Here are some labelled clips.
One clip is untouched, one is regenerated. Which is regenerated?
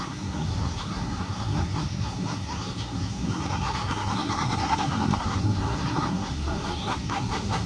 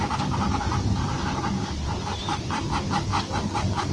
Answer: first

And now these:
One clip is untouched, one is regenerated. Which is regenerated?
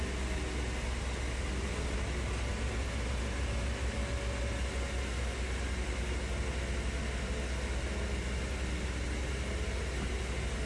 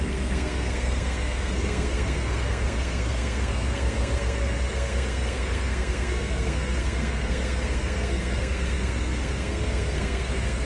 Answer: second